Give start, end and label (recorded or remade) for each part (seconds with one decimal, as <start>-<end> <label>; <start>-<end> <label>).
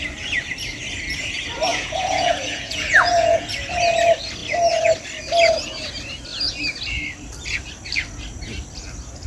0.0-1.7 recorded; 1.7-3.5 remade; 3.5-9.3 recorded